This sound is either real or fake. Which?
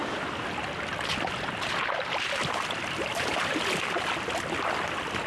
real